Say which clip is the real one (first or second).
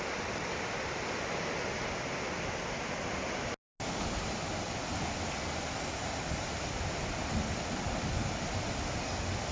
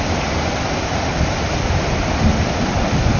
first